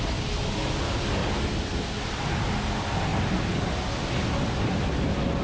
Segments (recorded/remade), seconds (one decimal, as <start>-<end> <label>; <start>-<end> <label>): 0.0-5.4 recorded